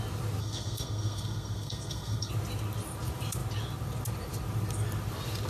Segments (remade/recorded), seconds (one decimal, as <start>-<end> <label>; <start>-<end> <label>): 0.0-0.4 recorded; 0.4-2.3 remade; 2.3-5.5 recorded